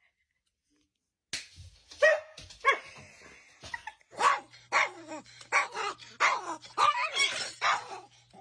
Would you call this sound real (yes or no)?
yes